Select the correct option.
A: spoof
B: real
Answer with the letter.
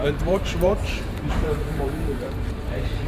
A